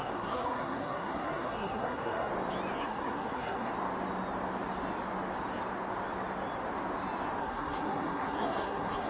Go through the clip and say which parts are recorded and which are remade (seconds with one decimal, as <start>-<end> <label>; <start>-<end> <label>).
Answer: 0.0-2.3 remade; 2.3-2.8 recorded; 2.8-3.7 remade; 3.7-7.4 recorded; 7.4-9.1 remade